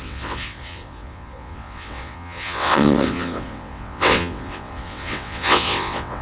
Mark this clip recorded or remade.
remade